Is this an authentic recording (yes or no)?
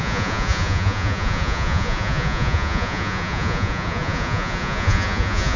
no